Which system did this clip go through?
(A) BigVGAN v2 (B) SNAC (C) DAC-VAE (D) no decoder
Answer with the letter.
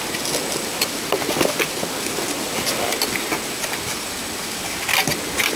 D